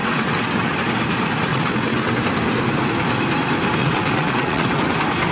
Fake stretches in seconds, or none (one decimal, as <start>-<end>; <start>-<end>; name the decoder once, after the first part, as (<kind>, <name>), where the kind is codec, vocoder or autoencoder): 0.0-0.7 (vocoder, WaveNeXt); 1.5-2.1; 3.8-4.8